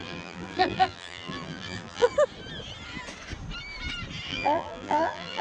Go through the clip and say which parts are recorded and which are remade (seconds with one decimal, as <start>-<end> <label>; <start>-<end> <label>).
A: 0.0-2.1 remade; 2.1-4.3 recorded; 4.3-5.4 remade